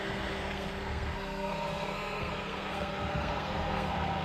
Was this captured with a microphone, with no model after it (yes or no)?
no